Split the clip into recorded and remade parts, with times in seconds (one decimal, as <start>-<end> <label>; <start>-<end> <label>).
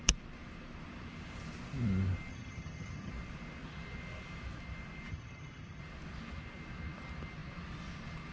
0.0-2.3 recorded; 2.3-3.1 remade; 3.1-5.1 recorded; 5.1-5.8 remade; 5.8-8.3 recorded